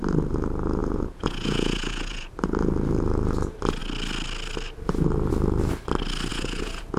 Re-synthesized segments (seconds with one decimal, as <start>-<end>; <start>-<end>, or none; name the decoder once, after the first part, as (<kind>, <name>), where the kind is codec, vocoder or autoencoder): 0.8-2.3 (vocoder, Vocos); 6.3-7.0